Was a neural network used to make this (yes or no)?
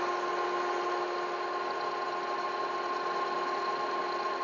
no